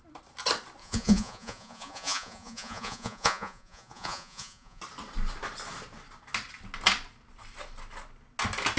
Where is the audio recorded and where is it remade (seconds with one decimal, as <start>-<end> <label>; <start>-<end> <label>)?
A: 0.0-0.8 recorded; 0.8-4.8 remade; 4.8-8.8 recorded